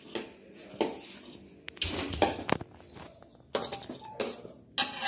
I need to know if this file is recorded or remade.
recorded